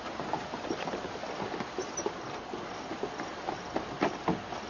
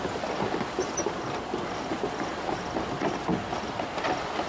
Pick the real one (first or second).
first